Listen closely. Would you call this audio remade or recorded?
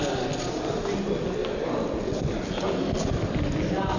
recorded